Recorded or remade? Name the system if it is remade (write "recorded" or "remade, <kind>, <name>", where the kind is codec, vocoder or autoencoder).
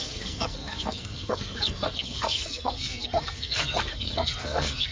remade, codec, SNAC